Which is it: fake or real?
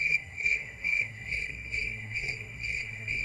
fake